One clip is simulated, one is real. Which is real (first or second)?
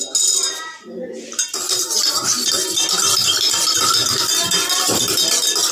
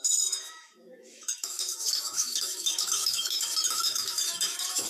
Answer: first